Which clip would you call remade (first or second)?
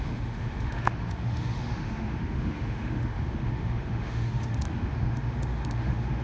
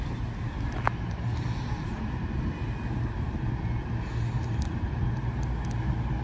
first